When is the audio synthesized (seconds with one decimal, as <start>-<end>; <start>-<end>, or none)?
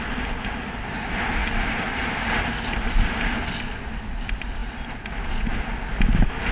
1.4-1.9